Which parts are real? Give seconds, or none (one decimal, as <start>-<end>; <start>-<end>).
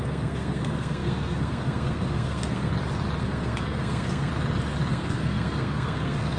2.7-3.2; 4.3-4.9